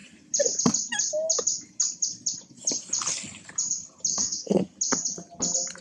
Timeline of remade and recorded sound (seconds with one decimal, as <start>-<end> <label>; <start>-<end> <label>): 0.0-4.1 recorded; 4.1-4.6 remade; 4.6-5.8 recorded